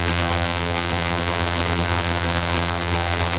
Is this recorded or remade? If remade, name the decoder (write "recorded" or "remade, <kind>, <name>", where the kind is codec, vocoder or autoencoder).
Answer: remade, vocoder, BigVGAN v2